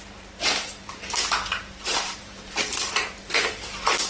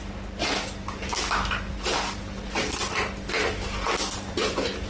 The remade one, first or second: first